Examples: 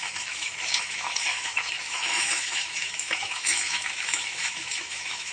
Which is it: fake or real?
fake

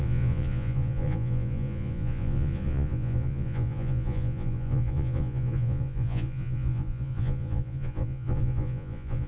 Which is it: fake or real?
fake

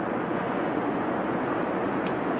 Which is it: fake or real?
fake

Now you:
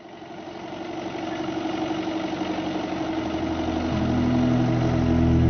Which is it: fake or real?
real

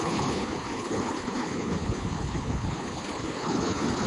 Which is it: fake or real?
fake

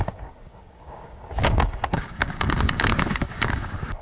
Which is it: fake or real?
fake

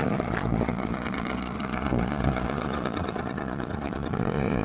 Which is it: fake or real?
fake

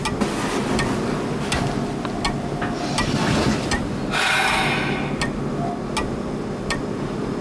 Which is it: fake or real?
real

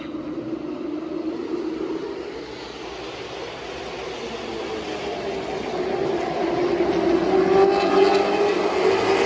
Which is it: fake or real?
real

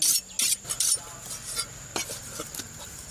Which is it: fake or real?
real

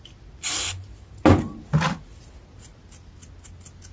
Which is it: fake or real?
real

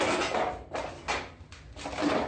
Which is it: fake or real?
real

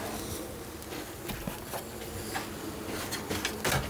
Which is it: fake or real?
real